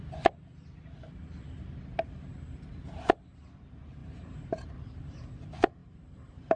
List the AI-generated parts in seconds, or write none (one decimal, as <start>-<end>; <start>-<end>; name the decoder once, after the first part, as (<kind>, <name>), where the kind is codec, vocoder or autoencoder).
2.3-2.8 (vocoder, BigVGAN v2); 4.0-4.7; 5.8-6.6